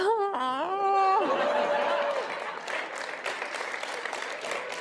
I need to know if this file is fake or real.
real